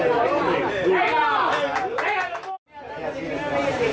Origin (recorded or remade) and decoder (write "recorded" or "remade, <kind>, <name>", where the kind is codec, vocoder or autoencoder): recorded